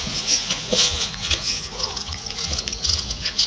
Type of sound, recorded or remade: remade